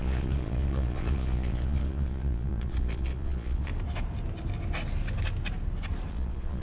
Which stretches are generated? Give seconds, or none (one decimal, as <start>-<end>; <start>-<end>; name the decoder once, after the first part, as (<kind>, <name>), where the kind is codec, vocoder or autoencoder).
0.0-3.7 (vocoder, Vocos); 6.1-6.6